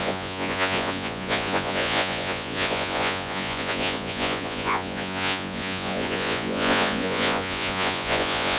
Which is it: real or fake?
fake